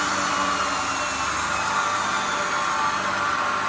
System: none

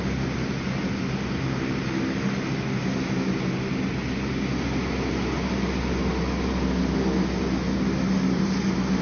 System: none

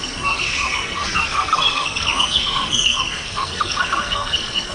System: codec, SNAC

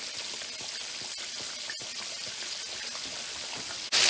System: none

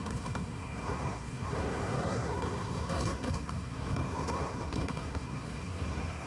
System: codec, SNAC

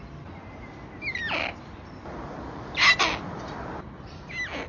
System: none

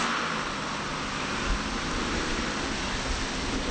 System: none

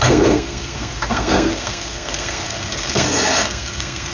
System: codec, SNAC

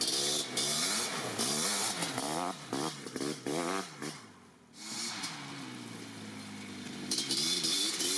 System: none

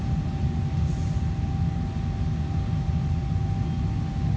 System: none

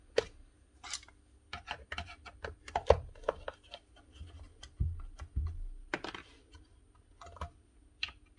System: none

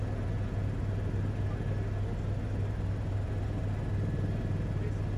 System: none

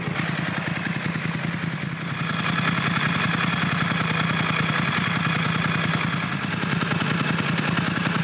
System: none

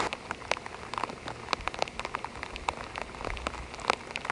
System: none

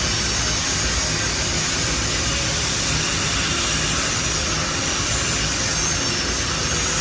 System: none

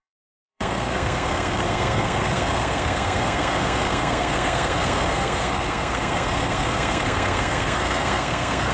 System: codec, SNAC